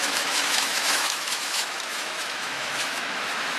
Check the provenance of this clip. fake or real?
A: fake